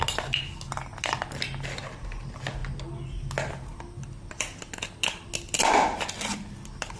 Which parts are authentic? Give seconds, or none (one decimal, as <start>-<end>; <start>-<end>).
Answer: 0.0-7.0